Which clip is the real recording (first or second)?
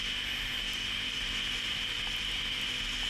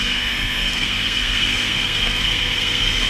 first